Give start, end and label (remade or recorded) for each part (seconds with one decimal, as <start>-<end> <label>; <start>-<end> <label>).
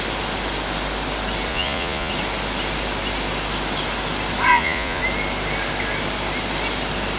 0.0-1.5 recorded; 1.5-2.1 remade; 2.1-4.5 recorded; 4.5-5.0 remade; 5.0-7.2 recorded